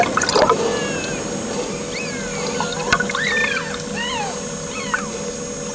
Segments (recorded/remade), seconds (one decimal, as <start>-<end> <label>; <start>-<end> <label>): 0.0-5.7 recorded